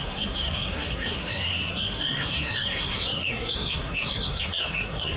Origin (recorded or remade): remade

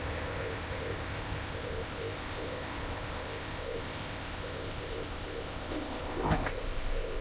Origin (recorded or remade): remade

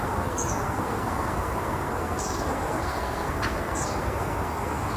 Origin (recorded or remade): remade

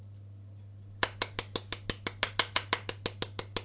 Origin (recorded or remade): recorded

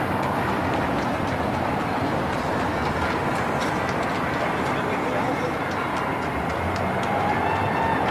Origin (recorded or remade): recorded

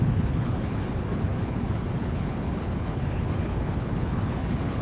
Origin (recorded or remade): remade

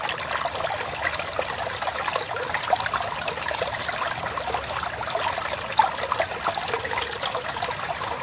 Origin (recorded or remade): recorded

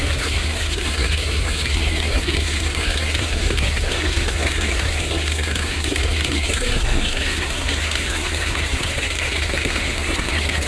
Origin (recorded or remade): remade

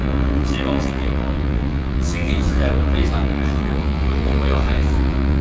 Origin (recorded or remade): remade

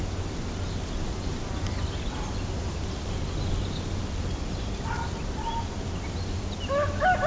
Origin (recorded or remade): recorded